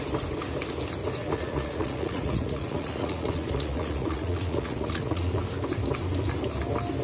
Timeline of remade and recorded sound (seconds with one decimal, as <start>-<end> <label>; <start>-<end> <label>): 0.0-1.2 recorded; 1.2-5.4 remade; 5.4-7.0 recorded